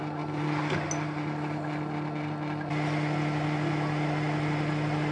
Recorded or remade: recorded